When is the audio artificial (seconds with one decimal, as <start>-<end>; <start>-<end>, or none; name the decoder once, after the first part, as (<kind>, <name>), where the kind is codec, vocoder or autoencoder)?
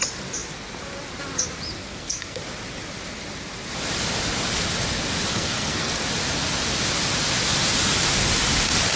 1.8-2.4 (codec, SNAC); 5.3-5.9